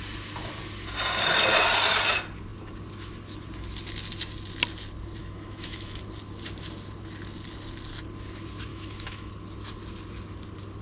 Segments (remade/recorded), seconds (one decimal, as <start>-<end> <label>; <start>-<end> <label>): 0.0-5.2 recorded; 5.2-6.0 remade; 6.0-8.7 recorded; 8.7-9.3 remade; 9.3-10.8 recorded